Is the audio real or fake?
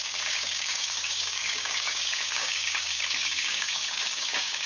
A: fake